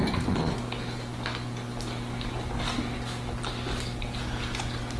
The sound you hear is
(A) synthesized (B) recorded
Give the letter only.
B